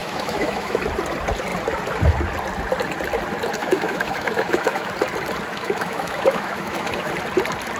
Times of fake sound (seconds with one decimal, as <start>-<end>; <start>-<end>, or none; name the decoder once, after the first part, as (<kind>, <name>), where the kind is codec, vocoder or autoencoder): 0.0-0.8 (autoencoder, DAC-VAE); 3.6-4.9; 5.5-7.1